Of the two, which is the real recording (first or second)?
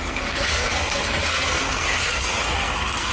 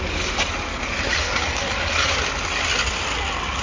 second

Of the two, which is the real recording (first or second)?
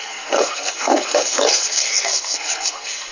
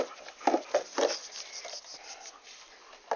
second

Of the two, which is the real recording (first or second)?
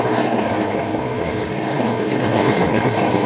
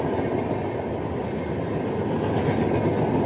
second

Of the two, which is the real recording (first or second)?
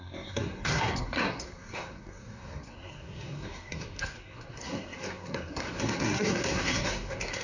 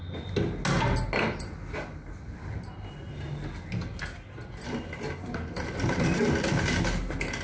second